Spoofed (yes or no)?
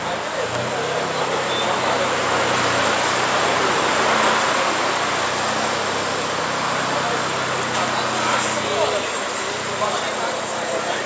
no